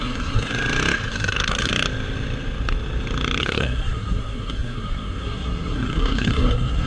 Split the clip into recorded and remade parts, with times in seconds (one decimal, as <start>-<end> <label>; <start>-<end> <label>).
0.0-0.5 remade; 0.5-1.1 recorded; 1.1-1.7 remade; 1.7-3.4 recorded; 3.4-6.9 remade